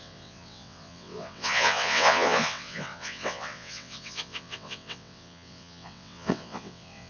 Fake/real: fake